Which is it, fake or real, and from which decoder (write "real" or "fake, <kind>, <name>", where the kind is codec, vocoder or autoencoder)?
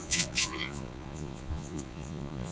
fake, vocoder, Vocos